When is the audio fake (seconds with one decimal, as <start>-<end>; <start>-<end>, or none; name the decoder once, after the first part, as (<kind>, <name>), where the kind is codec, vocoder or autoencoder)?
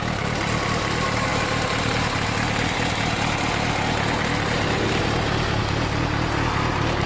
none